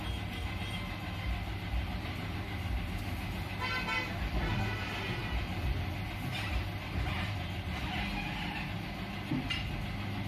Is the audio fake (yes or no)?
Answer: no